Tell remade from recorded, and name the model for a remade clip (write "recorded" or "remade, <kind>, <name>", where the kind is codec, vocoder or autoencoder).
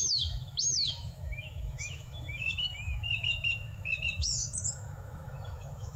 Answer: remade, autoencoder, DAC-VAE